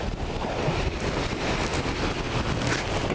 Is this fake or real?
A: real